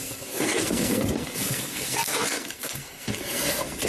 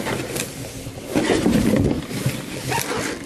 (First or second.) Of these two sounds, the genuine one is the second